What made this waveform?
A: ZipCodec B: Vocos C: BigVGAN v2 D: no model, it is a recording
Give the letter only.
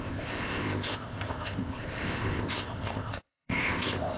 A